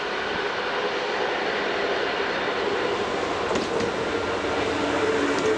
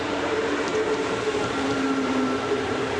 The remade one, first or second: second